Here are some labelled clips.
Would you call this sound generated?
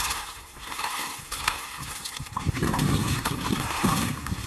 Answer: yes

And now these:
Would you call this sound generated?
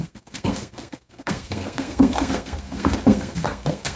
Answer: yes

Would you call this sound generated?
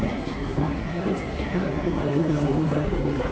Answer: yes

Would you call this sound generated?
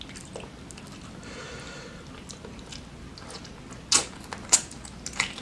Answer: no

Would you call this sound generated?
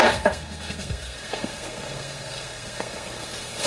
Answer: yes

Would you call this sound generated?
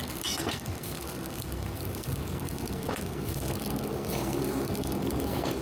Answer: yes